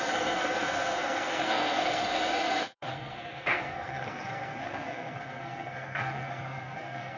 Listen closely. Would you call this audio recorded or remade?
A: remade